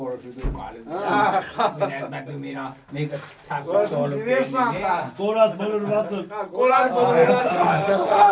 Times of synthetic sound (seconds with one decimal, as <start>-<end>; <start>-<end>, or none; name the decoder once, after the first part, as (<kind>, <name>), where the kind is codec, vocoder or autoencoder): 7.4-8.3 (autoencoder, DAC-VAE)